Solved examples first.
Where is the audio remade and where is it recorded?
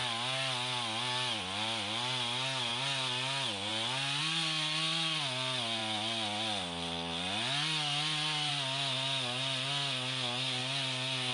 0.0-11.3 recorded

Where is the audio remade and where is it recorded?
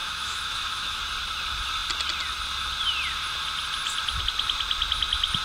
0.0-1.0 remade; 1.0-5.4 recorded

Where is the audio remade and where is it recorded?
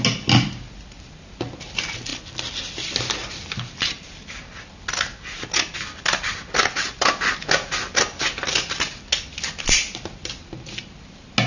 0.0-2.1 recorded; 2.1-3.8 remade; 3.8-11.5 recorded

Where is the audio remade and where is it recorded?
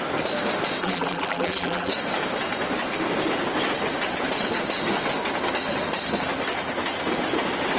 0.0-0.8 recorded; 0.8-1.9 remade; 1.9-7.8 recorded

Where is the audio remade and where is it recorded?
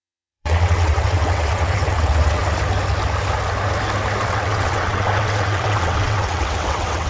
0.0-2.4 remade; 2.4-4.2 recorded; 4.2-7.1 remade